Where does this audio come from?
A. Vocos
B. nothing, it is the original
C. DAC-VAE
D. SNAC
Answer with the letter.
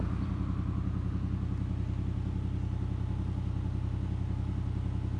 B